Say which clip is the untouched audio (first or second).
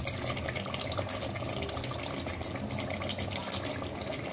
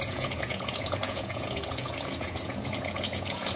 first